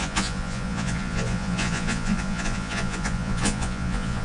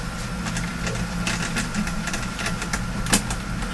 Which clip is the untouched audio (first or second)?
second